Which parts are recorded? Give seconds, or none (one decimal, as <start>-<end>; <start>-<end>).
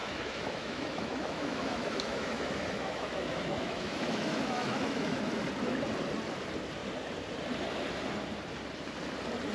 5.2-9.5